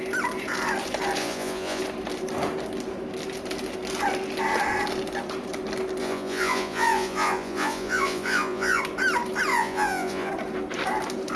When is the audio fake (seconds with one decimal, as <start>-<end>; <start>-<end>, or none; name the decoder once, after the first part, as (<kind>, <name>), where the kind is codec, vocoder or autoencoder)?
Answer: 1.2-1.8 (vocoder, Vocos); 6.0-8.8; 9.5-10.3